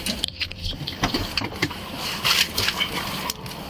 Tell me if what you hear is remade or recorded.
remade